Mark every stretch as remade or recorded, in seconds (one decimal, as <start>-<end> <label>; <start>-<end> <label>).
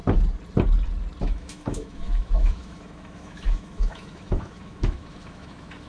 0.0-1.2 recorded; 1.2-5.9 remade